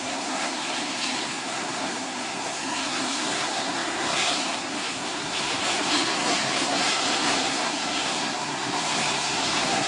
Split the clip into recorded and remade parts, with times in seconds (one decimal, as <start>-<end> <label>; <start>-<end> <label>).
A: 0.0-9.9 remade